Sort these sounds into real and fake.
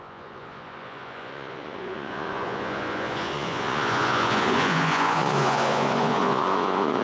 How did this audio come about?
fake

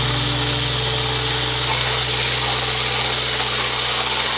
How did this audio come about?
real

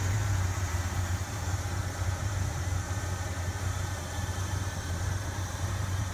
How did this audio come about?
fake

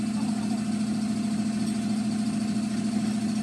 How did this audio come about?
real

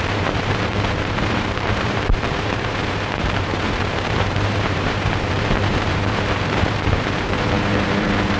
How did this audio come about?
fake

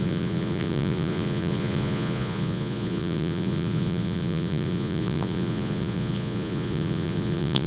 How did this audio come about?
fake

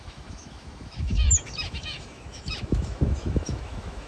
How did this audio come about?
fake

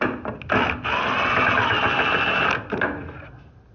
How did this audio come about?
real